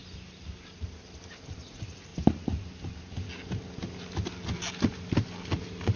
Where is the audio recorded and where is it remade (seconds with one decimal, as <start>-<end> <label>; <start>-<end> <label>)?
0.0-1.7 recorded; 1.7-2.1 remade; 2.1-6.0 recorded